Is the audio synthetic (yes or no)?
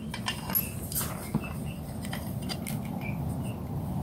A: no